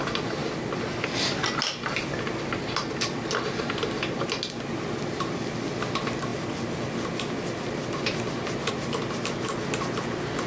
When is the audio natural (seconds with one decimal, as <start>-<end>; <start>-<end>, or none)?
0.0-10.5